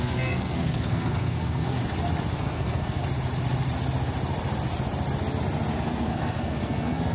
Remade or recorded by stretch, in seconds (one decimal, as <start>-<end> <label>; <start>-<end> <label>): 0.0-1.8 remade; 1.8-2.3 recorded; 2.3-3.0 remade; 3.0-5.8 recorded; 5.8-7.1 remade